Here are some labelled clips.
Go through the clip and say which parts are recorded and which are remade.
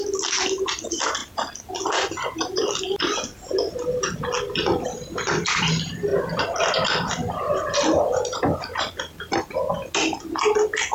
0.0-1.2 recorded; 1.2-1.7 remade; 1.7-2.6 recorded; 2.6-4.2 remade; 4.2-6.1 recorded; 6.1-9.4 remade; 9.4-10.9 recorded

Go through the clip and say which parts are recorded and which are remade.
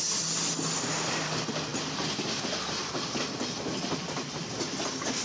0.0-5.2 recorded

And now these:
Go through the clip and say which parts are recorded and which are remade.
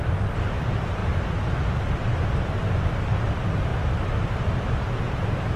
0.0-1.0 remade; 1.0-3.3 recorded; 3.3-3.7 remade; 3.7-4.2 recorded; 4.2-5.6 remade